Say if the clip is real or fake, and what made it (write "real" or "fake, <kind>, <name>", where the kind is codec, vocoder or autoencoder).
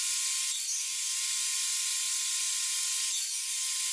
real